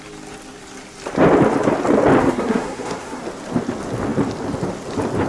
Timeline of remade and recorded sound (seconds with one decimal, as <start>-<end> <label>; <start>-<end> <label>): 0.0-2.2 recorded; 2.2-3.2 remade; 3.2-5.3 recorded